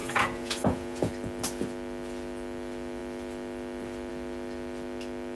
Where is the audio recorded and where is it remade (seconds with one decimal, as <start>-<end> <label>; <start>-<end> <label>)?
0.0-1.1 remade; 1.1-5.3 recorded

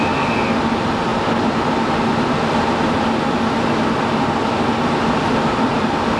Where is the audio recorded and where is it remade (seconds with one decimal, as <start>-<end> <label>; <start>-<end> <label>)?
0.0-6.2 recorded

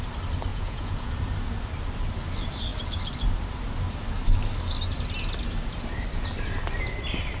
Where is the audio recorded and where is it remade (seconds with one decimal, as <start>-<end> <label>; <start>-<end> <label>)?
0.0-0.5 recorded; 0.5-1.1 remade; 1.1-7.4 recorded